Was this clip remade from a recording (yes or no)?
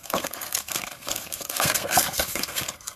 yes